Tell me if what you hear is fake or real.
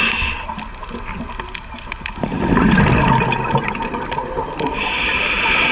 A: real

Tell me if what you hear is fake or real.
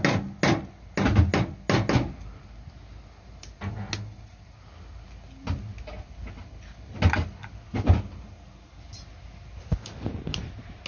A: real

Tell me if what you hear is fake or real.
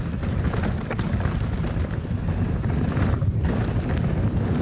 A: real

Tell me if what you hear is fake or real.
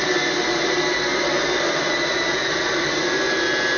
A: real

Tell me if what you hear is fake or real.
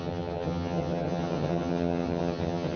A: fake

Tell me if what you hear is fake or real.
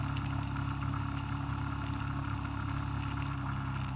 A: real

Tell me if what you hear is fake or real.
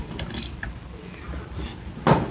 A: real